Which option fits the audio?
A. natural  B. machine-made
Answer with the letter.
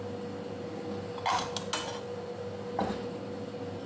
A